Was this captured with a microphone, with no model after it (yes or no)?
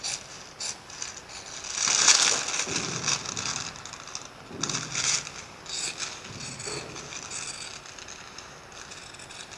yes